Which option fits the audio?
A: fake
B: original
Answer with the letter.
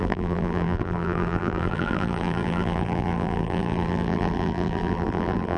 A